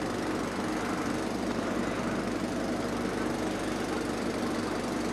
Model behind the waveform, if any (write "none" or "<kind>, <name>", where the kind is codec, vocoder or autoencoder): none